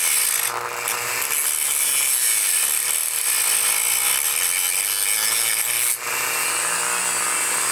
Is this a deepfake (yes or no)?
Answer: no